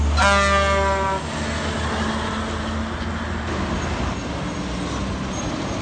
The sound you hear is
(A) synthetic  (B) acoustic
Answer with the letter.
B